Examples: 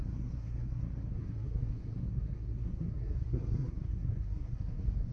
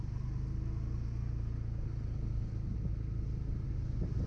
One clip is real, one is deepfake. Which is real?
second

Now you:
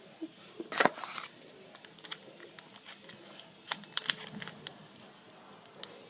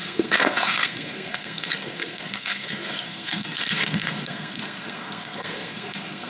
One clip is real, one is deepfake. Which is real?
first